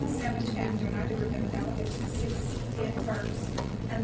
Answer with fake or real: fake